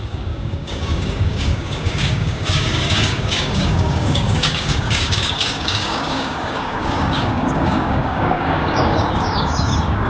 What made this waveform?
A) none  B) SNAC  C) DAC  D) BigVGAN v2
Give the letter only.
C